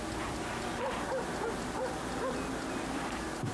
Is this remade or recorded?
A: recorded